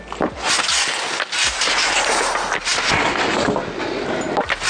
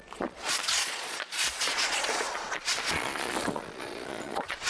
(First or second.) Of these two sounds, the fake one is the second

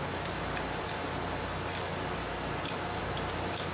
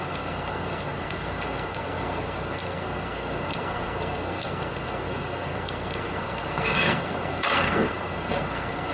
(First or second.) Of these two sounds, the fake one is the second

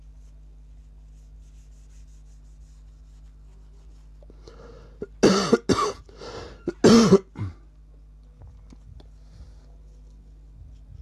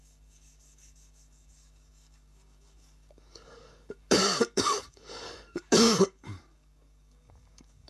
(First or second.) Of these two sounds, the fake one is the second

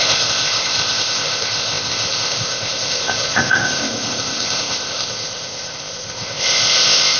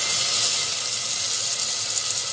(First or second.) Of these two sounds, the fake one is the first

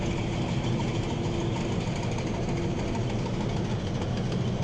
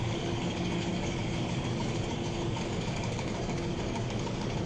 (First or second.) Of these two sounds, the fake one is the second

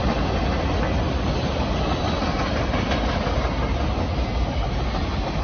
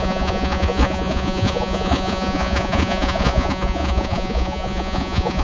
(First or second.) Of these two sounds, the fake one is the second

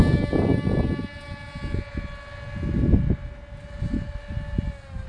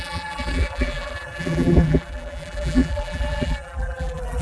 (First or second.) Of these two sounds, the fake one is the second